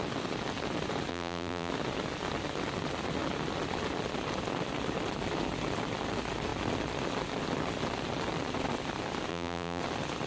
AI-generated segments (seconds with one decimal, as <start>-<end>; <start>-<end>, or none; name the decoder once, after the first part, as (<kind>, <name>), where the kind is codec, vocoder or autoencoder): 1.1-1.7 (vocoder, BigVGAN v2); 9.3-9.8